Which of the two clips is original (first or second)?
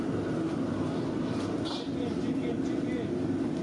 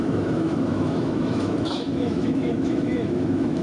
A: first